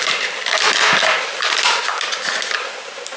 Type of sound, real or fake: real